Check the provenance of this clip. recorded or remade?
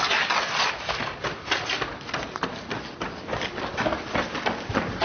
recorded